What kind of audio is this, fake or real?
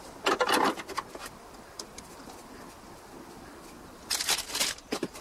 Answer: real